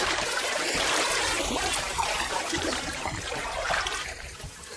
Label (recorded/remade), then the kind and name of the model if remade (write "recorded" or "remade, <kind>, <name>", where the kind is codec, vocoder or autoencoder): remade, vocoder, BigVGAN v2